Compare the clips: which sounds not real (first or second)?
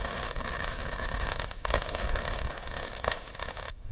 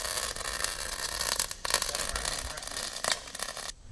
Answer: first